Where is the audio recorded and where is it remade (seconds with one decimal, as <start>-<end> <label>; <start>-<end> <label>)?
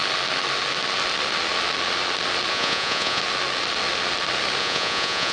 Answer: 0.0-2.5 recorded; 2.5-3.2 remade; 3.2-4.6 recorded; 4.6-5.3 remade